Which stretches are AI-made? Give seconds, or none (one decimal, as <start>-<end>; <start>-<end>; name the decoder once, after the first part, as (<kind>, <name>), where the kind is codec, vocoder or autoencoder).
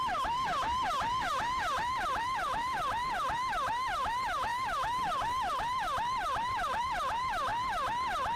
0.0-7.5 (vocoder, BigVGAN v2)